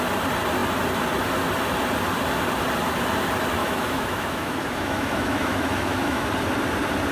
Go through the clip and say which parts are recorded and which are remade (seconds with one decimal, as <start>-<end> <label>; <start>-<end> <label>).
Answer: 0.0-3.6 recorded; 3.6-6.3 remade; 6.3-7.1 recorded